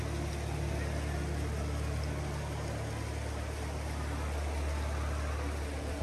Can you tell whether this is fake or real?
real